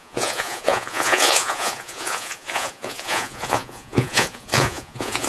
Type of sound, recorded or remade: remade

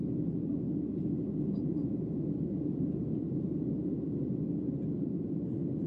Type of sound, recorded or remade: recorded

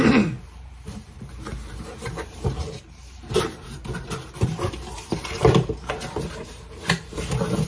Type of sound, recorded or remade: remade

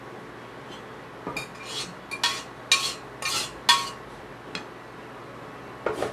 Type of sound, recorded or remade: recorded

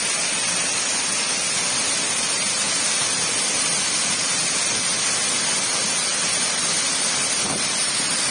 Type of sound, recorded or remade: recorded